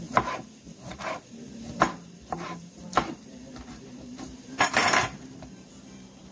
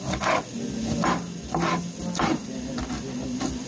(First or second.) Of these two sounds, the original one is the second